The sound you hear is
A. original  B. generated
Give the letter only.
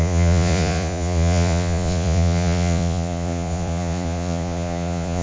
B